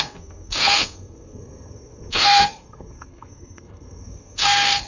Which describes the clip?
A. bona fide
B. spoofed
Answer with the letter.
B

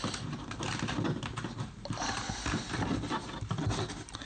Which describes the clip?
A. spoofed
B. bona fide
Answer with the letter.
B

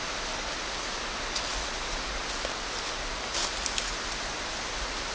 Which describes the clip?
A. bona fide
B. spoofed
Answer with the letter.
A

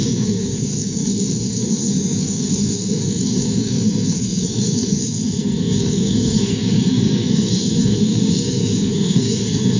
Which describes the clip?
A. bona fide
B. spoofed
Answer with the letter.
B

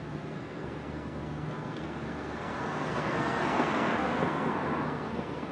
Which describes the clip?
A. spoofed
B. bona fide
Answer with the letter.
A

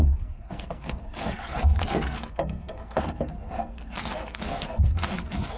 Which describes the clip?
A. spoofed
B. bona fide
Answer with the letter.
A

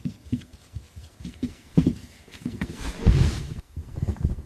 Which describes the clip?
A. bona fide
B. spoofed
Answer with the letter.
B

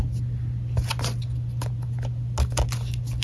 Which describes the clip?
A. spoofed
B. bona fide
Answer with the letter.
B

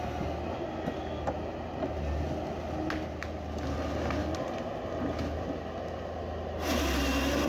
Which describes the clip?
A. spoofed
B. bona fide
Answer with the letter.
B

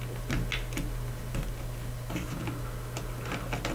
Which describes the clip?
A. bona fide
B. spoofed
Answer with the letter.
A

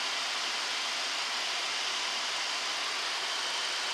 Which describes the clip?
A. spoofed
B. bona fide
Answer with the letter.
B